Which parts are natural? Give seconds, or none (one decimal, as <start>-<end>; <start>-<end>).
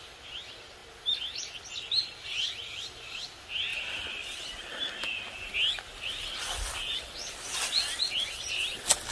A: 0.0-9.1